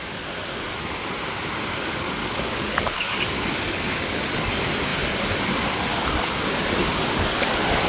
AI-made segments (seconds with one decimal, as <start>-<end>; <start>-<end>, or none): 2.2-4.5